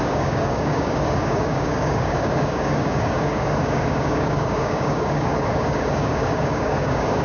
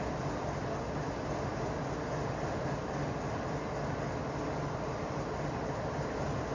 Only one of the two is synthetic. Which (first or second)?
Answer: first